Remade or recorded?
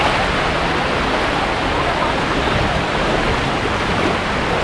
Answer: recorded